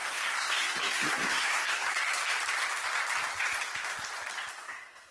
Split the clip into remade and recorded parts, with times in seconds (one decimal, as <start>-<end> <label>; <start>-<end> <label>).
0.0-2.2 remade; 2.2-4.5 recorded; 4.5-5.1 remade